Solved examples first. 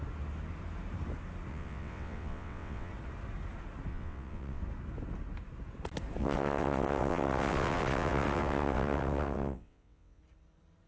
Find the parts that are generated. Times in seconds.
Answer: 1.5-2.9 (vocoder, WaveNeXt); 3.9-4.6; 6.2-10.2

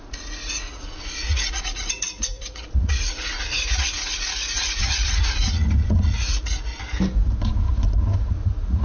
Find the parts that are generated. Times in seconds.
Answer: 0.0-6.7 (vocoder, Vocos); 8.3-8.8

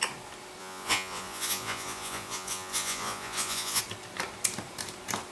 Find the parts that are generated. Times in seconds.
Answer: 0.6-3.8 (vocoder, Vocos)